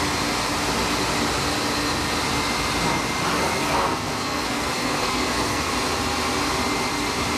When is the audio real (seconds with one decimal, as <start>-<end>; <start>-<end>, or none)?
0.0-3.4; 5.7-7.4